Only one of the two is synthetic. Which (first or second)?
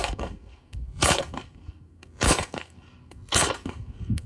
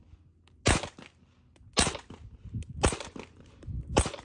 first